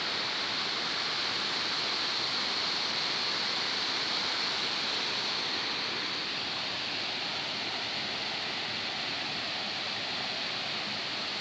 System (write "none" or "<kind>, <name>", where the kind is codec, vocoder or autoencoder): none